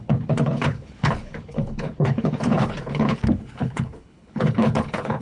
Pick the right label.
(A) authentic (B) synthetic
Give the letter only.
B